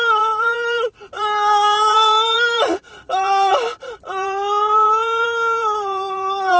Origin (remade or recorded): remade